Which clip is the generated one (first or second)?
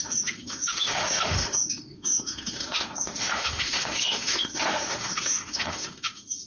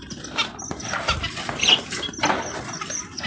first